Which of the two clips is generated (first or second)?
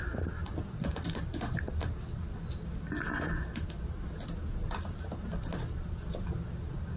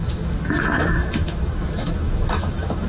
second